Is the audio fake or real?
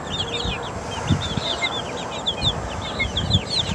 real